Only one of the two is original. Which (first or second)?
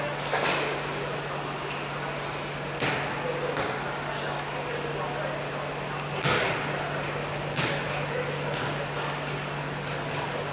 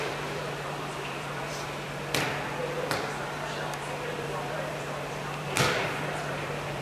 first